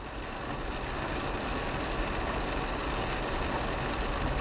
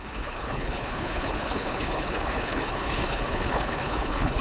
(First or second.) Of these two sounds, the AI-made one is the second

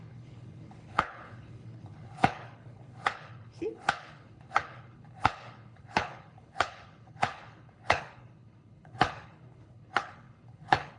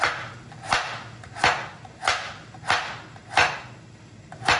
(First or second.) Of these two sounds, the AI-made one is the first